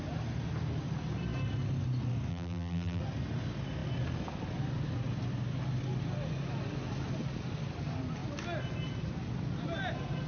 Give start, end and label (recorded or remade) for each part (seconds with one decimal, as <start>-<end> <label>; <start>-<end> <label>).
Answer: 0.0-2.3 recorded; 2.3-3.0 remade; 3.0-10.3 recorded